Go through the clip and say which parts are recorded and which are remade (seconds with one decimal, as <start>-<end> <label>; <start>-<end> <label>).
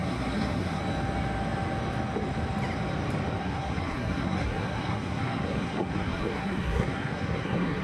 0.0-0.8 remade; 0.8-3.4 recorded; 3.4-7.8 remade